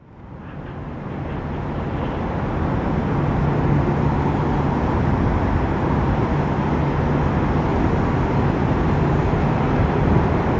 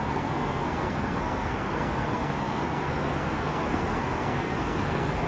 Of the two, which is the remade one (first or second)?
second